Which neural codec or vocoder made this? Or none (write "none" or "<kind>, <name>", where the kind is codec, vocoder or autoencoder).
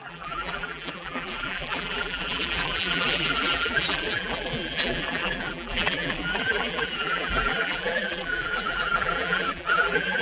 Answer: vocoder, BigVGAN v2